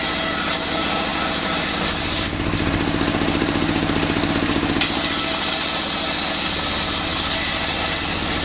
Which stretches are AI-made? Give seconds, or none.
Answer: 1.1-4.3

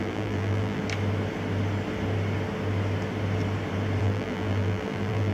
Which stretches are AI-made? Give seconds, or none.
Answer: 0.0-0.8; 4.0-5.3

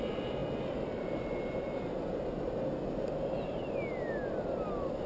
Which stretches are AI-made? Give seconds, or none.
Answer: none

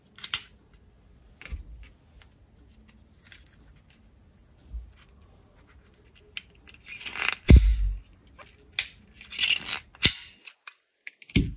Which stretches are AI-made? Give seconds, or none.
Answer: none